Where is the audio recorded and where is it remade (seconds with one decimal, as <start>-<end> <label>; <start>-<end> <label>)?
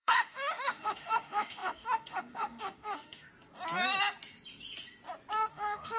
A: 0.0-3.3 remade; 3.3-5.5 recorded; 5.5-6.0 remade